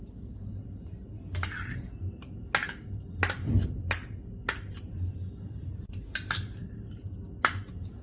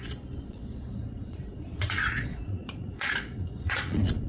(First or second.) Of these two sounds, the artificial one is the second